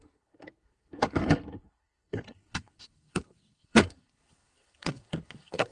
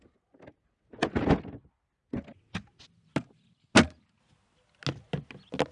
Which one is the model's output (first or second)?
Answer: first